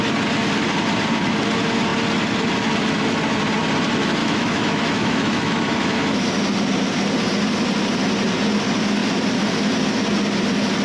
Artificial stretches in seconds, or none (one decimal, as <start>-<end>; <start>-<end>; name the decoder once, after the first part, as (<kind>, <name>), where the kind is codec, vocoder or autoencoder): 4.2-6.3 (autoencoder, DAC-VAE)